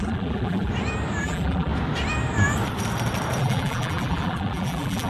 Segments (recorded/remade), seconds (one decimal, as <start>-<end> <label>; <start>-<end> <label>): 0.0-0.7 remade; 0.7-1.2 recorded; 1.2-1.7 remade; 1.7-3.4 recorded; 3.4-5.1 remade